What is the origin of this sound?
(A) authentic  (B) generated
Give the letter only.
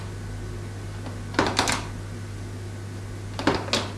A